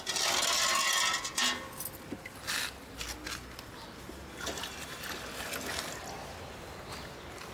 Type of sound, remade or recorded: recorded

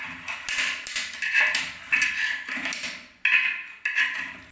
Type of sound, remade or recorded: recorded